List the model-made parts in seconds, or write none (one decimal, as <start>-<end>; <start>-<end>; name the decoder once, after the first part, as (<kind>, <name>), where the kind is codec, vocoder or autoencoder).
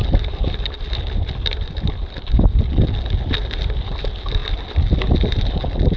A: none